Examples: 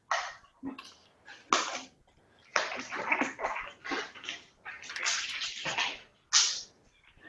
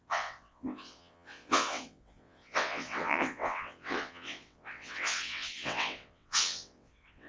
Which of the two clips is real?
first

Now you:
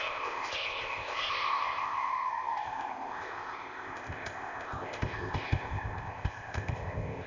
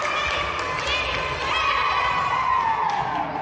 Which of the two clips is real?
second